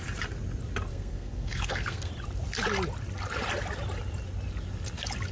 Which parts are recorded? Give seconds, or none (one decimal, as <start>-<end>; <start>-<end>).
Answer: 0.0-0.9; 2.1-5.3